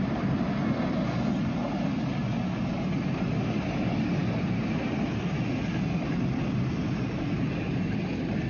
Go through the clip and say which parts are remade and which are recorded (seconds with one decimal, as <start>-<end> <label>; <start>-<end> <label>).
0.0-8.5 recorded